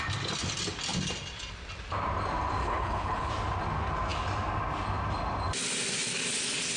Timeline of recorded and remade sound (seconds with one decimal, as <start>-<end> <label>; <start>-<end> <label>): 0.0-2.6 recorded; 2.6-3.3 remade; 3.3-6.8 recorded